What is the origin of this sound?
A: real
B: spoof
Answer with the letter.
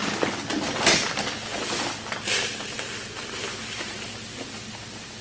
A